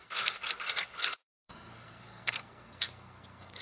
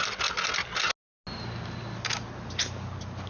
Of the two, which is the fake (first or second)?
first